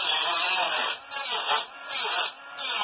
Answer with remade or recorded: recorded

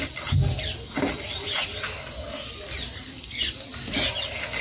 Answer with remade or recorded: recorded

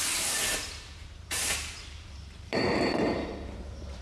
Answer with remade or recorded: remade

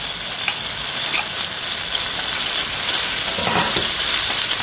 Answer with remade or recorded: recorded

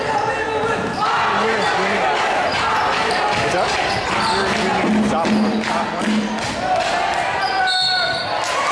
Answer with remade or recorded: recorded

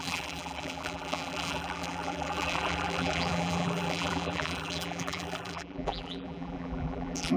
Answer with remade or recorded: remade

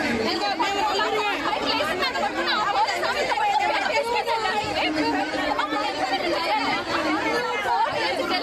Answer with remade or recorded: recorded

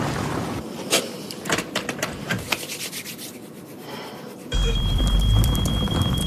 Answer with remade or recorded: remade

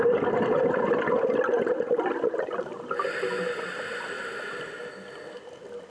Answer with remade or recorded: recorded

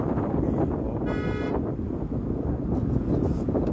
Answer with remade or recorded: recorded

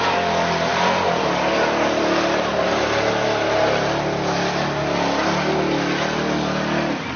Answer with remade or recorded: recorded